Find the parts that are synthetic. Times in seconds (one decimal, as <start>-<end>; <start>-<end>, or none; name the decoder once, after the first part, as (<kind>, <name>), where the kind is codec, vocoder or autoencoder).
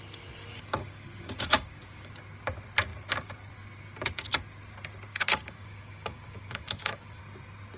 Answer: 0.5-2.1 (codec, DAC); 5.1-7.2